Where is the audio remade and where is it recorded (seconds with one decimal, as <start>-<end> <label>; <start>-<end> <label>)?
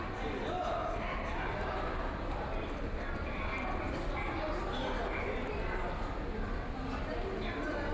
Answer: 0.0-7.9 recorded